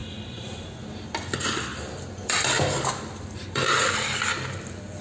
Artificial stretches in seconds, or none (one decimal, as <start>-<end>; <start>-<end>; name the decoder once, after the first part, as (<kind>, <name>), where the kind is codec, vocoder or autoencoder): 1.7-5.0 (vocoder, BigVGAN v2)